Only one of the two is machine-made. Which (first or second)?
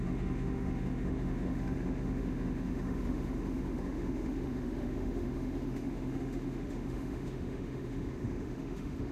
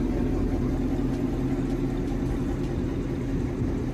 first